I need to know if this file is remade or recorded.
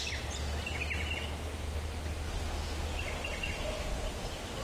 recorded